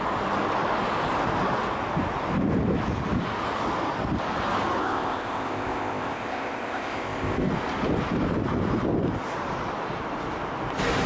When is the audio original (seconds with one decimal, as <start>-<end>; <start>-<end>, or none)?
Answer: 0.0-4.8; 7.5-11.1